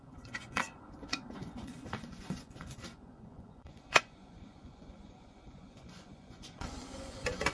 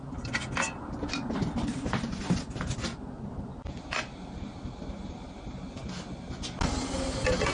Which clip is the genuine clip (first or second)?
second